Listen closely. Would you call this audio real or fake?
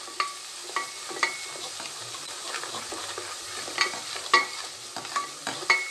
real